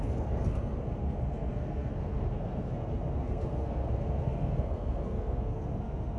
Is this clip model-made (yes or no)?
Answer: yes